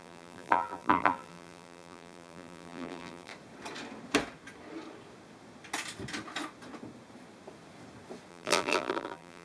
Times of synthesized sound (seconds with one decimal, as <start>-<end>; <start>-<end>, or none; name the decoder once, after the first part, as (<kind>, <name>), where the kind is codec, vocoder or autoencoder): 0.0-3.3 (vocoder, BigVGAN v2); 8.3-9.4